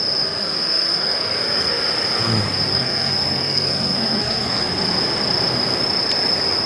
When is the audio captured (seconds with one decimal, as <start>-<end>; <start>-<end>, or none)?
0.0-0.4; 1.8-2.7; 4.6-6.7